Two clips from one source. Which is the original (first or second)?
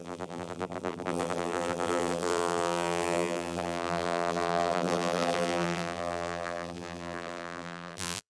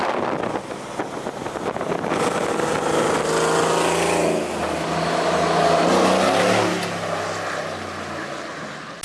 second